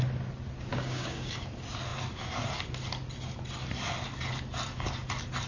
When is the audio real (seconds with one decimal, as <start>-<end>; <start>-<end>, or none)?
0.0-0.7; 1.4-5.5